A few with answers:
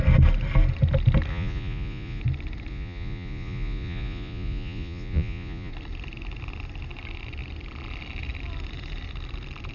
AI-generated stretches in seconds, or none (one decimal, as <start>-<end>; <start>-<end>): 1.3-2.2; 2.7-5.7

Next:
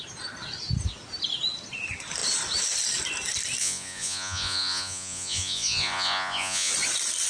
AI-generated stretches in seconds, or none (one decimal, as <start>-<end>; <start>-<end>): 3.6-6.7

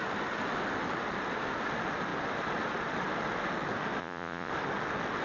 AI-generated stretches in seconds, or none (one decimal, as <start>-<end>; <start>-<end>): 4.0-4.5

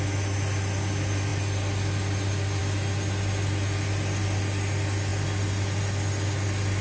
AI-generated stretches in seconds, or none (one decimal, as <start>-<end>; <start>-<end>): none

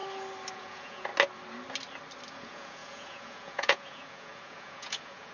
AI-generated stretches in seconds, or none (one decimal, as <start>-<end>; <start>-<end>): 0.5-1.1; 2.3-5.3